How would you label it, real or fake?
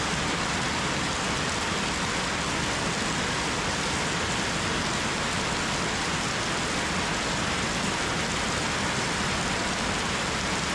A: real